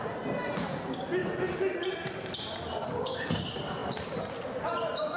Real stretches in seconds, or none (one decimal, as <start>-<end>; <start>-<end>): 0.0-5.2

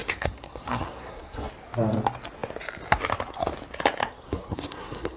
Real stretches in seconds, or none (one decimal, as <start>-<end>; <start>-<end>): 1.5-4.0

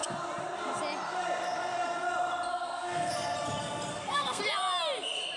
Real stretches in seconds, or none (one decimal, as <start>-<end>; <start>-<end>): 0.0-2.5; 3.1-3.9; 4.4-5.4

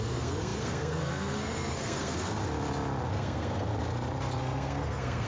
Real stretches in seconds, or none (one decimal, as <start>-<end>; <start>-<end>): 2.4-3.1; 3.7-4.4

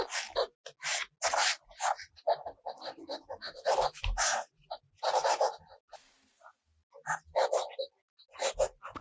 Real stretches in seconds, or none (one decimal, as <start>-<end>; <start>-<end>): 0.0-9.0